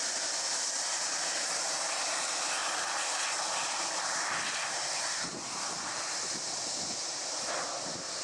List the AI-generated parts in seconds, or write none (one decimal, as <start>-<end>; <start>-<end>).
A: 0.0-8.2